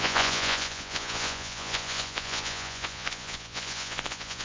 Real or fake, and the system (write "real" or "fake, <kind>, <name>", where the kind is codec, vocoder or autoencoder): fake, vocoder, Vocos